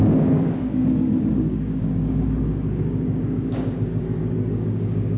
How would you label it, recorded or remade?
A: remade